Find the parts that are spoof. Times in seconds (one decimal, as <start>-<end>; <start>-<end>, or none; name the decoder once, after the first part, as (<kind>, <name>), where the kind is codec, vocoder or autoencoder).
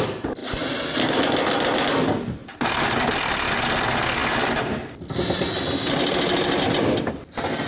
none